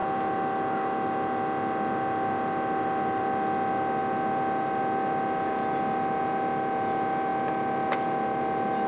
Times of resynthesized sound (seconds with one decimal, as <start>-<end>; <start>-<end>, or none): none